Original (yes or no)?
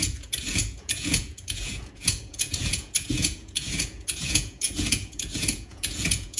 no